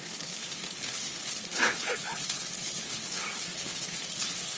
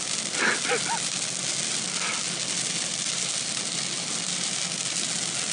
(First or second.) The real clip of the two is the second